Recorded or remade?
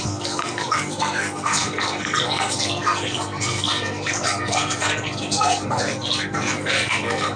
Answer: remade